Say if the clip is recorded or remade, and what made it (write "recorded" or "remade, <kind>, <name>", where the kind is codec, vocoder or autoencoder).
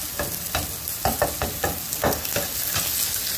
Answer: recorded